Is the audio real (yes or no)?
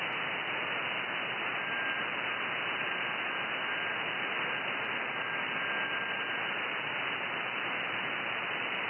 yes